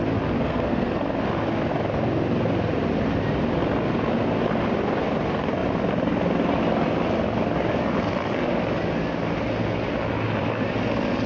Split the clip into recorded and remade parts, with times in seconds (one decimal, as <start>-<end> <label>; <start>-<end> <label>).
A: 0.0-0.4 recorded; 0.4-0.9 remade; 0.9-11.3 recorded